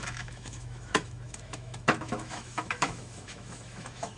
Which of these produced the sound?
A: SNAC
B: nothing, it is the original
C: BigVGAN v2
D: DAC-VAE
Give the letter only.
D